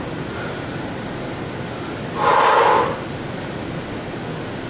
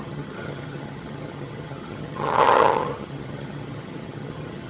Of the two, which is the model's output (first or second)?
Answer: second